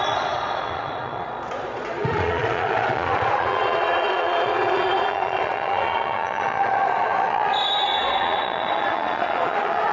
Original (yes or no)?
no